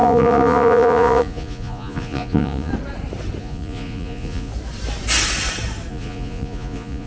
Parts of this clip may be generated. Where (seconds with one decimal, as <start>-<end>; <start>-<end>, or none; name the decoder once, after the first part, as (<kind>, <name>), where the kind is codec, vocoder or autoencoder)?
0.0-2.7 (vocoder, Vocos); 3.4-4.5; 5.9-7.1